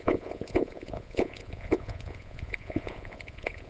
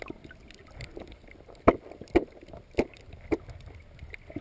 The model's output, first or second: first